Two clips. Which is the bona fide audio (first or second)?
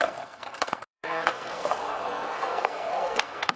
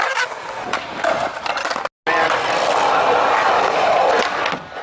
second